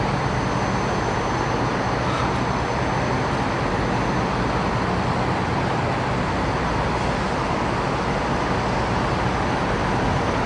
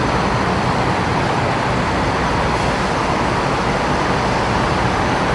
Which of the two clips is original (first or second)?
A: first